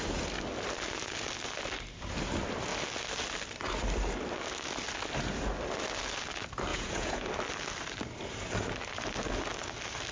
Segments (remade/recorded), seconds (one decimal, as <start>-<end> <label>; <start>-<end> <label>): 0.0-6.7 recorded; 6.7-7.3 remade; 7.3-10.1 recorded